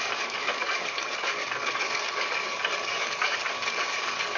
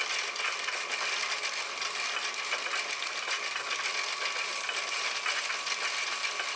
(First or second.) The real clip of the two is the second